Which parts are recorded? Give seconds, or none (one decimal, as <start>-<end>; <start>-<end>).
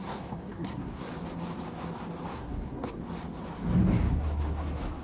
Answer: 1.1-2.3; 3.0-4.1